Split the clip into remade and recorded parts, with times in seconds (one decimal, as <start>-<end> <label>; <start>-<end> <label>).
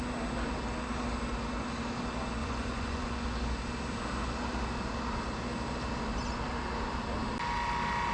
0.0-2.4 recorded; 2.4-3.1 remade; 3.1-8.1 recorded